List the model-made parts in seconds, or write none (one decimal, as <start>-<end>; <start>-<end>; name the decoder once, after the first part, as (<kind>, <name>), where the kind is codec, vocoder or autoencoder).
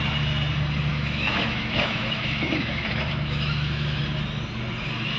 0.9-4.0 (autoencoder, DAC-VAE)